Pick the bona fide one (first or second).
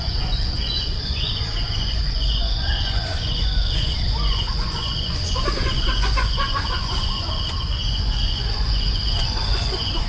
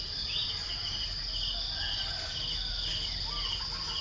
second